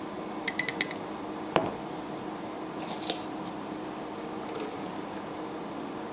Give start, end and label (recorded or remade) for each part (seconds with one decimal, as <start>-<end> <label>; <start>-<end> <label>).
0.0-6.1 recorded